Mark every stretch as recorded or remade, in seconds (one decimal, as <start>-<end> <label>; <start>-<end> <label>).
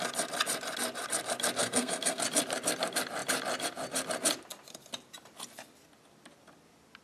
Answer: 0.0-1.6 recorded; 1.6-2.2 remade; 2.2-7.0 recorded